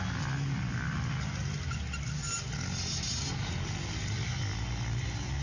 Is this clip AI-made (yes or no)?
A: no